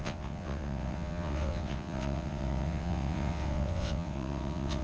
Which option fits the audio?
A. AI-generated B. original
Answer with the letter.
A